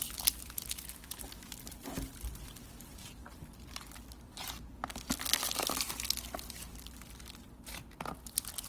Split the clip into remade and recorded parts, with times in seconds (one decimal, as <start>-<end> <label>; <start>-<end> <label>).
0.0-8.7 recorded

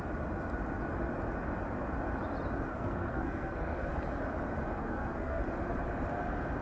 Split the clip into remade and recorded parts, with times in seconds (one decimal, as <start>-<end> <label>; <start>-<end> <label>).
0.0-2.7 recorded; 2.7-3.9 remade; 3.9-4.8 recorded; 4.8-5.4 remade; 5.4-6.6 recorded

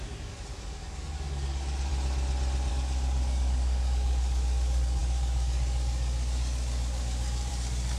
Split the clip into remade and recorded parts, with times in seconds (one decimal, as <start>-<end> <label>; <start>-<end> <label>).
0.0-1.9 remade; 1.9-2.7 recorded; 2.7-8.0 remade